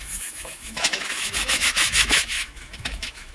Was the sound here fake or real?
fake